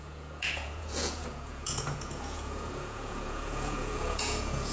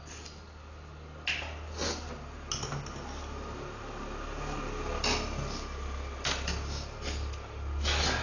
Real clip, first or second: second